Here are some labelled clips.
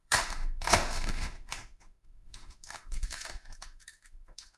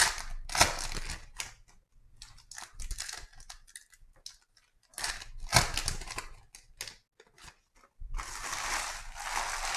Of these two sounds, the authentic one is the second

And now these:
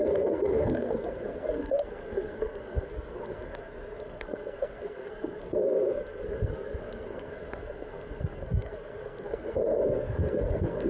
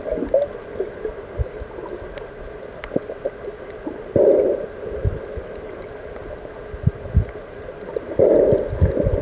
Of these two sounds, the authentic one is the second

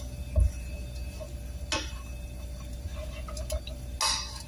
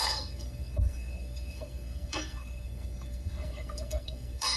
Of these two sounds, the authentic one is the first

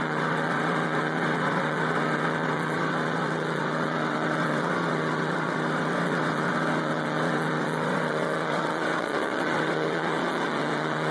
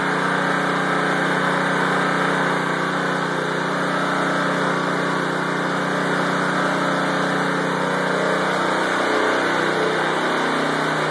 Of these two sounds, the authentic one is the second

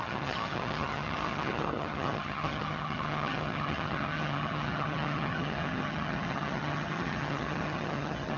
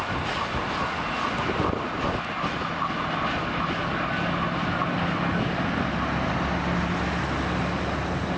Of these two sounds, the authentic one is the second